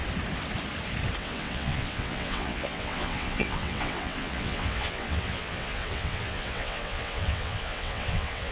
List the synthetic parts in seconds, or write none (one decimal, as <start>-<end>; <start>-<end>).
1.2-8.5